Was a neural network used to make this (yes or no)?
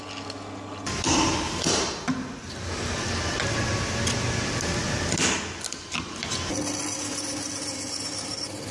no